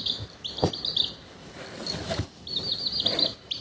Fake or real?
real